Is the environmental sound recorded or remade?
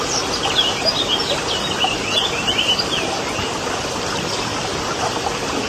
recorded